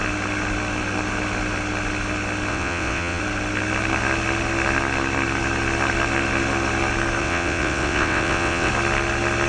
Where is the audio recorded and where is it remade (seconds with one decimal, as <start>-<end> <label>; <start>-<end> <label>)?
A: 0.0-2.5 recorded; 2.5-3.2 remade; 3.2-7.2 recorded; 7.2-8.7 remade; 8.7-9.5 recorded